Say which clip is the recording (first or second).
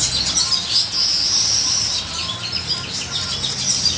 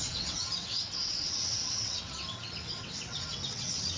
first